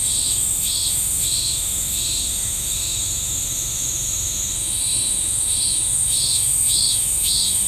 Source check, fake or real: fake